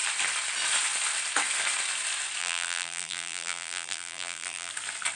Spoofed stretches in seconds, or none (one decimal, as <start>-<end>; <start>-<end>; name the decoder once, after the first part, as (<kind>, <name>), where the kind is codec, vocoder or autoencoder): 2.4-4.7 (vocoder, BigVGAN v2)